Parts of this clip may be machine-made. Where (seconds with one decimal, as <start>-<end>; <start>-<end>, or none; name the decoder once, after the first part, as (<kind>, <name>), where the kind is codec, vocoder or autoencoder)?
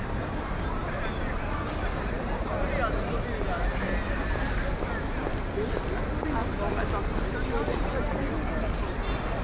none